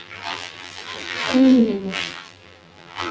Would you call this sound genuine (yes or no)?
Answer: no